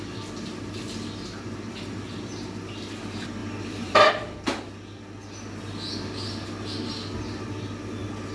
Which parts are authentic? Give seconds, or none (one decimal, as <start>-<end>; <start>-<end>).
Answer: 0.0-3.4; 4.1-8.3